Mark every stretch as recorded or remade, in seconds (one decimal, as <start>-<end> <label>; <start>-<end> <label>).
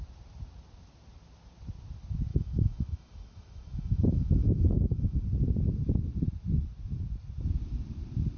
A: 0.0-2.3 recorded; 2.3-5.2 remade; 5.2-8.4 recorded